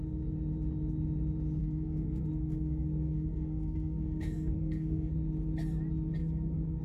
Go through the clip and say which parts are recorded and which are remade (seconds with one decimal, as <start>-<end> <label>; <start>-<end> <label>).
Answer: 0.0-1.6 recorded; 1.6-5.1 remade; 5.1-6.2 recorded; 6.2-6.8 remade